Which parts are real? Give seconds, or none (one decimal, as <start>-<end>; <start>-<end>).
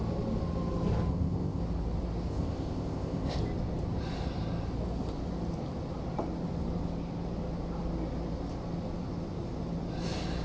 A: 0.0-1.1; 1.6-2.3; 3.4-10.4